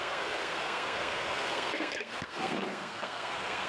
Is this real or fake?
fake